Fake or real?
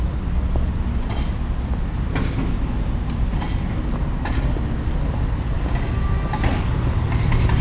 real